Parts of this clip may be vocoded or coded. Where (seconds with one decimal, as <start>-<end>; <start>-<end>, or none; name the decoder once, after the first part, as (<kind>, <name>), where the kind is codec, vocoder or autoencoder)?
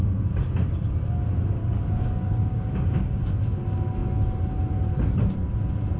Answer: 1.6-3.2 (codec, DAC)